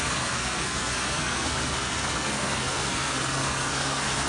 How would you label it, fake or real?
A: fake